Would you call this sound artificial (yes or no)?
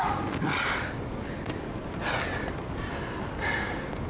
no